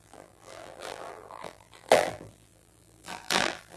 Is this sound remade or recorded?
remade